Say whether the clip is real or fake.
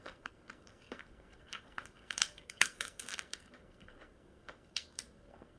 fake